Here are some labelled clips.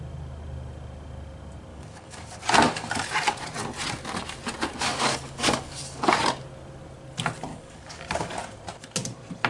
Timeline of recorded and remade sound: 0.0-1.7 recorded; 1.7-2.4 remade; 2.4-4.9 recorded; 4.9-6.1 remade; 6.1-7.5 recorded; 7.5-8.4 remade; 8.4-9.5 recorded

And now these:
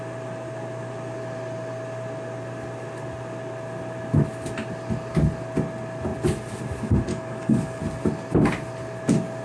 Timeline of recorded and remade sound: 0.0-7.1 recorded; 7.1-7.8 remade; 7.8-9.4 recorded

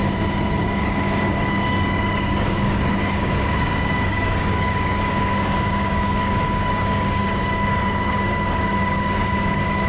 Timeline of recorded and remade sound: 0.0-0.5 recorded; 0.5-9.9 remade

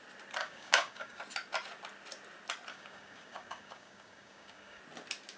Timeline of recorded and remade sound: 0.0-0.4 recorded; 0.4-1.2 remade; 1.2-2.7 recorded; 2.7-4.8 remade; 4.8-5.4 recorded

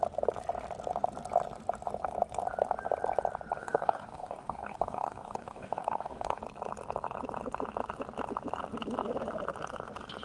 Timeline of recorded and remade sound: 0.0-3.6 recorded; 3.6-6.4 remade; 6.4-10.2 recorded